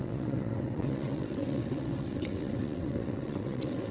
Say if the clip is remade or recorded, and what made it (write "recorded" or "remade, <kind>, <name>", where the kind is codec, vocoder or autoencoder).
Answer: remade, vocoder, WaveNeXt